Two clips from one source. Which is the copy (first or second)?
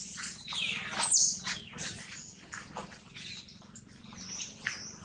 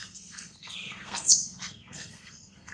second